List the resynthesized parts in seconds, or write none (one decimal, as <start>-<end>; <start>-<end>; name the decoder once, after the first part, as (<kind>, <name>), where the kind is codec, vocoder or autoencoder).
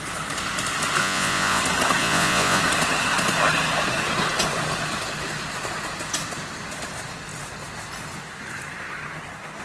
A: 1.0-1.6 (vocoder, Vocos); 2.0-2.6